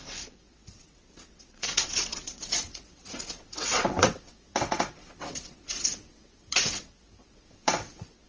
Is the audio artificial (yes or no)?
yes